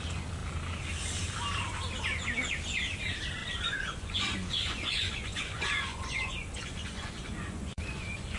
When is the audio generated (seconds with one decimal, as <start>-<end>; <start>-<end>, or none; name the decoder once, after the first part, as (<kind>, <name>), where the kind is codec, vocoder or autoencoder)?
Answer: 3.4-8.4 (vocoder, Vocos)